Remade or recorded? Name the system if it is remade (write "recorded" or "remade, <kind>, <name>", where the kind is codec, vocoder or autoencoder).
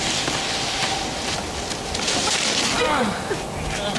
recorded